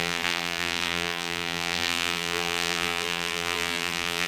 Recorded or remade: remade